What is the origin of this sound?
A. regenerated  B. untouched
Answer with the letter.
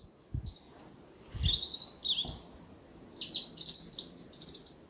B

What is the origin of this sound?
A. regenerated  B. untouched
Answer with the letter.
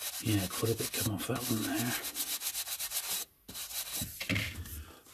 B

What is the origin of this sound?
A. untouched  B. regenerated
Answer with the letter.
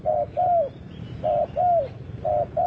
A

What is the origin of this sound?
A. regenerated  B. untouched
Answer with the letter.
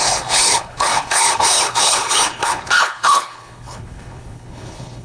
A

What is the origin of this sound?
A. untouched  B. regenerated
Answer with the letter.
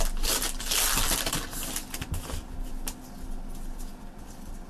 A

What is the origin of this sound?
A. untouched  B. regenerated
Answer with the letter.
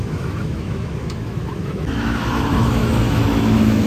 B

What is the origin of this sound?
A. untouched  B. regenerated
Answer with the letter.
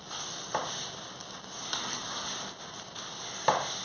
A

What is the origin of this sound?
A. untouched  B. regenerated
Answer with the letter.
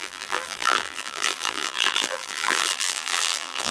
B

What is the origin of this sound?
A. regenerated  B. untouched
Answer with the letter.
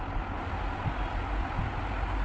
B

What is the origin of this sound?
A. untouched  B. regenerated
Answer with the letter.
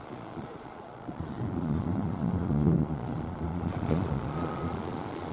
B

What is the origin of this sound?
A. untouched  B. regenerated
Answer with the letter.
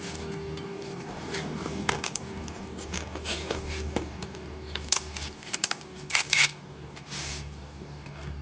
B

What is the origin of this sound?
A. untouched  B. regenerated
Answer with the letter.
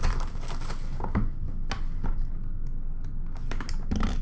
A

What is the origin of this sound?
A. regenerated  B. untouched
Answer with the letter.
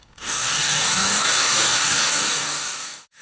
A